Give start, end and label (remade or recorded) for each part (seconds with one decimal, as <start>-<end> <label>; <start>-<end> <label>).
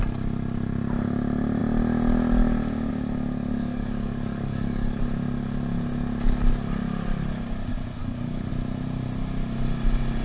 0.0-3.5 recorded; 3.5-5.0 remade; 5.0-8.0 recorded; 8.0-8.5 remade; 8.5-10.2 recorded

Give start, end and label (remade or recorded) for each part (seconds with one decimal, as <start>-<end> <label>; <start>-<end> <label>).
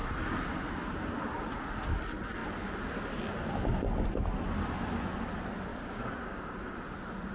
0.0-5.7 recorded; 5.7-6.4 remade; 6.4-7.3 recorded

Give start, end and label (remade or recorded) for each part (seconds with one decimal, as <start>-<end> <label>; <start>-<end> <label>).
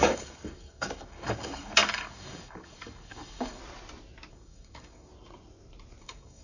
0.0-3.6 remade; 3.6-4.3 recorded; 4.3-5.1 remade; 5.1-6.0 recorded; 6.0-6.4 remade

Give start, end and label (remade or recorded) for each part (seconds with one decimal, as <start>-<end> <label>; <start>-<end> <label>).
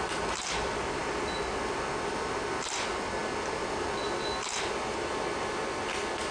0.0-6.3 recorded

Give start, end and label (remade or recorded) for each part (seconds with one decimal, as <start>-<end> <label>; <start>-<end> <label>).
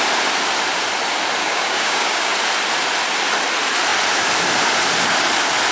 0.0-1.4 recorded; 1.4-2.3 remade; 2.3-5.7 recorded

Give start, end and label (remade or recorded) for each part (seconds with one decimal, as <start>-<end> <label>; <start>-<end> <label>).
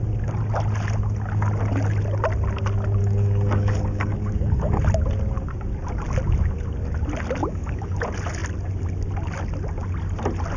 0.0-3.0 recorded; 3.0-4.8 remade; 4.8-7.4 recorded; 7.4-8.0 remade; 8.0-10.6 recorded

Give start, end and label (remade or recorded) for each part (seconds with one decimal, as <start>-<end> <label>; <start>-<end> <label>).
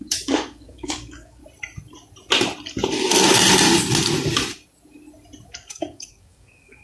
0.0-1.4 remade; 1.4-5.5 recorded; 5.5-6.8 remade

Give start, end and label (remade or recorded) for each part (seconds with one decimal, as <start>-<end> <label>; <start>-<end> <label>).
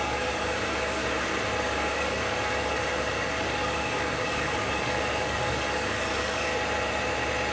0.0-1.0 remade; 1.0-1.6 recorded; 1.6-6.5 remade; 6.5-7.5 recorded